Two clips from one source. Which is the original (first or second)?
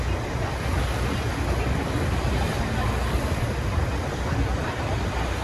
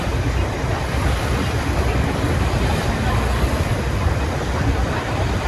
first